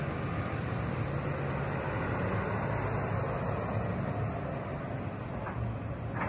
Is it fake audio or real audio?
real